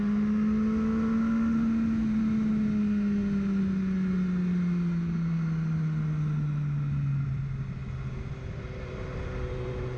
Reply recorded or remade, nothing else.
recorded